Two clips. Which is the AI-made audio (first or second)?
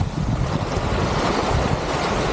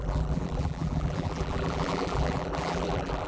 second